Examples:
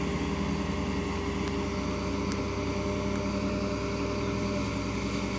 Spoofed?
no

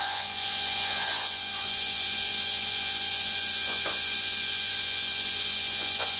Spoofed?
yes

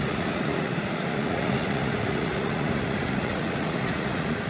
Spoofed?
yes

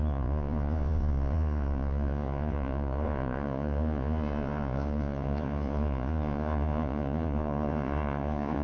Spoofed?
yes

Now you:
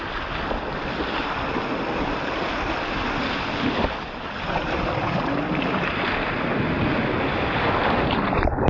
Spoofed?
no